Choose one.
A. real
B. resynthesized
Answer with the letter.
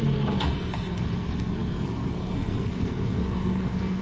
B